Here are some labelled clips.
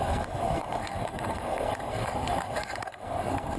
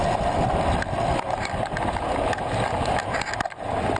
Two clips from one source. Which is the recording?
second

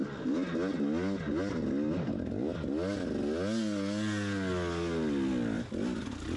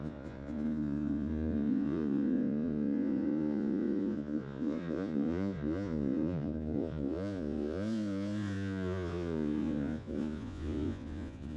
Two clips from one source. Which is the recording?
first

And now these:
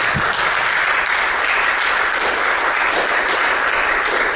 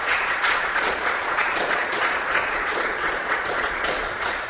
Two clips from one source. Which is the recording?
first